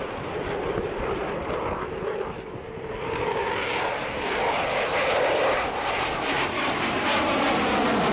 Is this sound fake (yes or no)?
no